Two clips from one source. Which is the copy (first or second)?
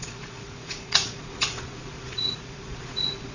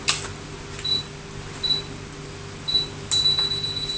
first